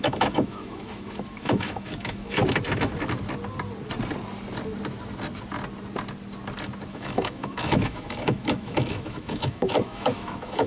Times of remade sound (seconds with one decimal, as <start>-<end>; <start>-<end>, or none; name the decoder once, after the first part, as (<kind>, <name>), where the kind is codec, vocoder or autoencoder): 0.0-2.4 (autoencoder, DAC-VAE); 6.9-10.7